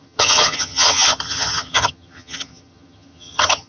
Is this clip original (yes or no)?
no